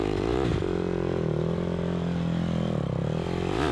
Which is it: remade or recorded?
recorded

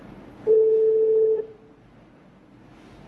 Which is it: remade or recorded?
recorded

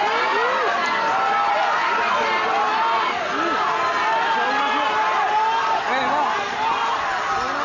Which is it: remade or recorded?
recorded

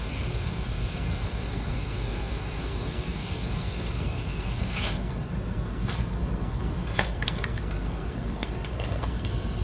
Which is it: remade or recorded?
remade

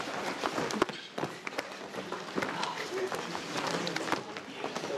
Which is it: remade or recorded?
remade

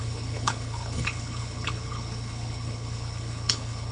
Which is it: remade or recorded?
remade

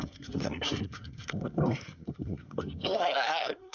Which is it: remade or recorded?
remade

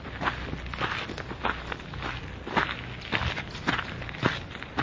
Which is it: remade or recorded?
recorded